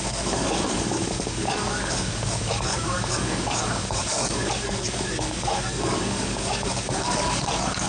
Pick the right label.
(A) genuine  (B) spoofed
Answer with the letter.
B